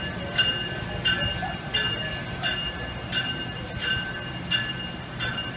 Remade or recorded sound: recorded